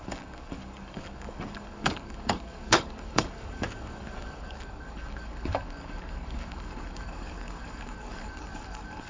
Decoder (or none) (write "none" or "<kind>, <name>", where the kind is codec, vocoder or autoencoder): codec, DAC